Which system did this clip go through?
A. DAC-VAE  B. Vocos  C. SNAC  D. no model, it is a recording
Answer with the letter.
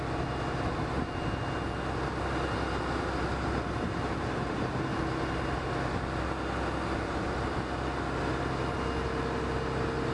D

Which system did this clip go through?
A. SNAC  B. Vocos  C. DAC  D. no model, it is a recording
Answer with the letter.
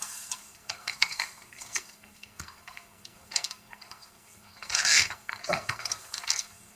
A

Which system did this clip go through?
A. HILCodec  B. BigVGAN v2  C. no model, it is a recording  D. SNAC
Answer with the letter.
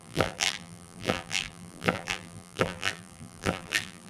B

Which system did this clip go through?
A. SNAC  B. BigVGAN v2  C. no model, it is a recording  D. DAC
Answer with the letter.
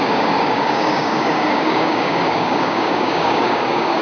D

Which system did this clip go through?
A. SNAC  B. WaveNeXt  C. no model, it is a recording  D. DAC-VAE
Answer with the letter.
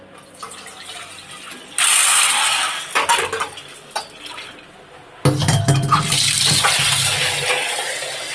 C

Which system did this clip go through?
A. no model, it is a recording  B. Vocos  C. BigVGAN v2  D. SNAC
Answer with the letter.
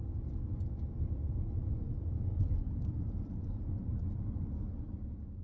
A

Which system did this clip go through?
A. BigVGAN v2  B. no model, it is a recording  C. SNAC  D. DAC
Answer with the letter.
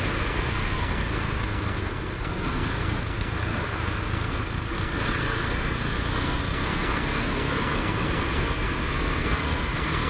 C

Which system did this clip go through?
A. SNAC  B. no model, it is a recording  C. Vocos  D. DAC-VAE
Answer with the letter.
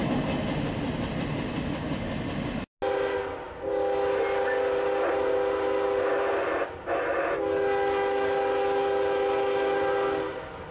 B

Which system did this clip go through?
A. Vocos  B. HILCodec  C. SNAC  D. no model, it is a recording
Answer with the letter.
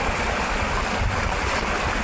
D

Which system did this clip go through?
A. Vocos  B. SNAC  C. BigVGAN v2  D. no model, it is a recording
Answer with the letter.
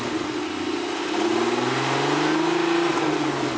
D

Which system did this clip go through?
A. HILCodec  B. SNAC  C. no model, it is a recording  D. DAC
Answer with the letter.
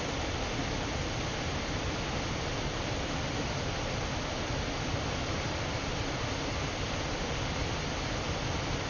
C